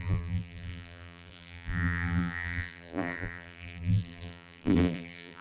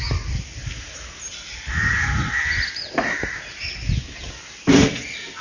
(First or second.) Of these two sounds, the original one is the second